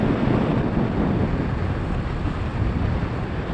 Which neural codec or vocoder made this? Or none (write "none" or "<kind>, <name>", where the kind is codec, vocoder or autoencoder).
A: none